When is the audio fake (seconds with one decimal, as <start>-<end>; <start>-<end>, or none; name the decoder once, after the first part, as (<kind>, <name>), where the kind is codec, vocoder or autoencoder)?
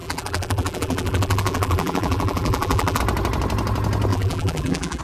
0.0-3.0 (vocoder, BigVGAN v2); 4.1-5.0